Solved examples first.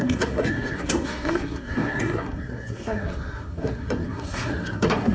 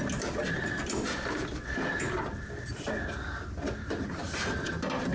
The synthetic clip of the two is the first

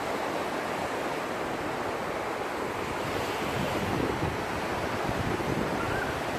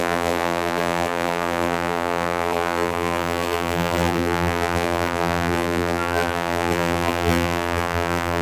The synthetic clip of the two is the second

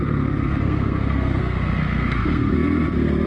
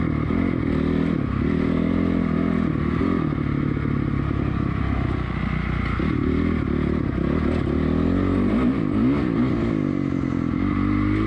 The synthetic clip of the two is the first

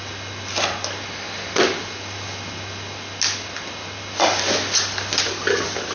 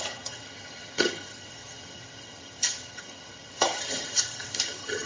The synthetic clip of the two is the second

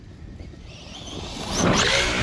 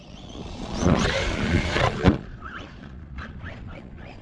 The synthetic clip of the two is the second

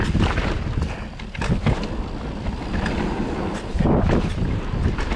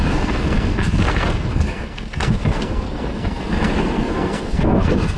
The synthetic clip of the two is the second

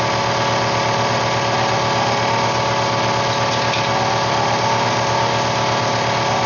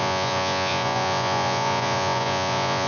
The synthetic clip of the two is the second